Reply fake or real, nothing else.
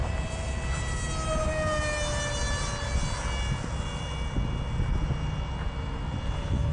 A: real